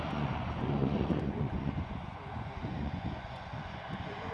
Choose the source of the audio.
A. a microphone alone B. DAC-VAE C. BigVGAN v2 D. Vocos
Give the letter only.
D